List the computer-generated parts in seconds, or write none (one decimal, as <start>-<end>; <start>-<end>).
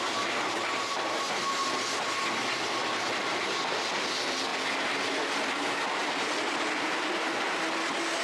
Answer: none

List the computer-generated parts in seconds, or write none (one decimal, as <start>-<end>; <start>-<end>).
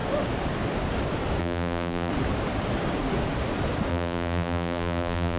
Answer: 1.4-2.1; 3.9-5.4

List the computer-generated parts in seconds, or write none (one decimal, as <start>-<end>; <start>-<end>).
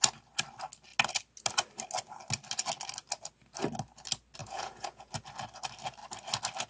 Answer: 4.4-5.1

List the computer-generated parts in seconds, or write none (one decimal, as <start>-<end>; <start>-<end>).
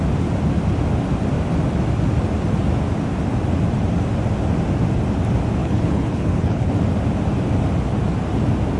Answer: 5.6-6.7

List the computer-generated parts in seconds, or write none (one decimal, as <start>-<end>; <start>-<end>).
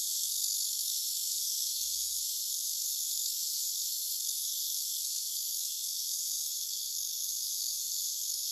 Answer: 0.0-8.5